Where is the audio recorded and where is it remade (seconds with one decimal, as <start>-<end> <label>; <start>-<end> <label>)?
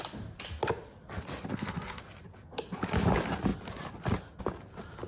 0.0-1.5 recorded; 1.5-2.0 remade; 2.0-5.1 recorded